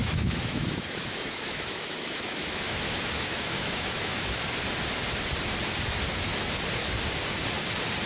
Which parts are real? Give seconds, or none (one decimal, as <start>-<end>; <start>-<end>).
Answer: 4.4-8.1